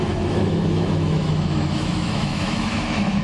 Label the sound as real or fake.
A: fake